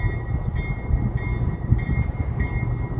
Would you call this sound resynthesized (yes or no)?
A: no